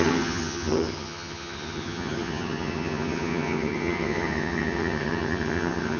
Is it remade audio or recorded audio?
remade